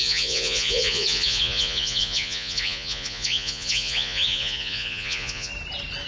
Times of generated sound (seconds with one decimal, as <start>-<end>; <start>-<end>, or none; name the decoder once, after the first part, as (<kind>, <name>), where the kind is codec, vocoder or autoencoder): 0.0-5.5 (vocoder, Vocos)